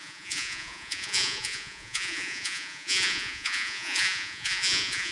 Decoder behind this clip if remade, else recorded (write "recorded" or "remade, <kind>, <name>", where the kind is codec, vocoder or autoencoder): remade, vocoder, Vocos